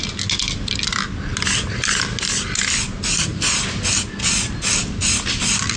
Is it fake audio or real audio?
real